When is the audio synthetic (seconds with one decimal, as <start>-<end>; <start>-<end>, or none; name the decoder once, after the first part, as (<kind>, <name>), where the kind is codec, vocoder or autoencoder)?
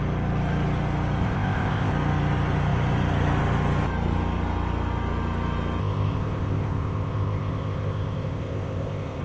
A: 1.2-1.9 (codec, ZipCodec); 5.8-9.2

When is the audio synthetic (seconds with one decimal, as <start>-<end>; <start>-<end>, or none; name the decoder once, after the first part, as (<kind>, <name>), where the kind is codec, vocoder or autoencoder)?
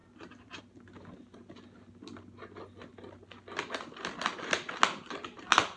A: 0.0-0.6 (vocoder, BigVGAN v2)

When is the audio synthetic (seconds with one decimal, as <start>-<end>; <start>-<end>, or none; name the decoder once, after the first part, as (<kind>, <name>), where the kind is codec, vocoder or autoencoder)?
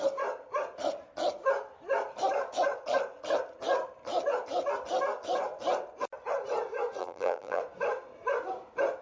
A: 7.0-7.6 (vocoder, BigVGAN v2)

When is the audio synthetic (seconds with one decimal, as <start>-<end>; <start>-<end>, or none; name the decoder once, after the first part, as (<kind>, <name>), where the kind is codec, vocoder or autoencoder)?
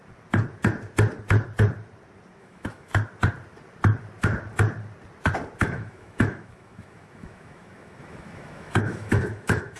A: 2.4-2.9 (autoencoder, DAC-VAE); 5.6-9.8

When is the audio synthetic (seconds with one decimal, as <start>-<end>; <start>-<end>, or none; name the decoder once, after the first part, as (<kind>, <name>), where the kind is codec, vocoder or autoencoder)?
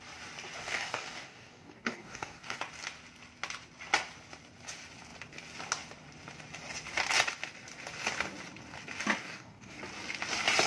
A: 0.6-2.6 (codec, DAC); 9.2-9.8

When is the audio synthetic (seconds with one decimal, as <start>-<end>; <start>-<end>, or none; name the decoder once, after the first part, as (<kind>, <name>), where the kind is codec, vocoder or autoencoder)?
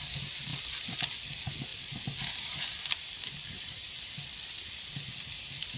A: none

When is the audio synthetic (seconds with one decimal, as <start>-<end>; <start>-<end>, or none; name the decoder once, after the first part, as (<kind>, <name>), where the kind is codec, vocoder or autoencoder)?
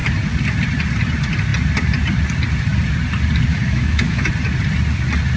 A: 3.5-4.3 (autoencoder, DAC-VAE)